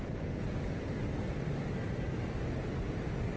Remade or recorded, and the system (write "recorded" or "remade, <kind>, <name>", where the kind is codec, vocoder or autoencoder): remade, vocoder, BigVGAN v2